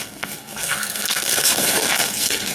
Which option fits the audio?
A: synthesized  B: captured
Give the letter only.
A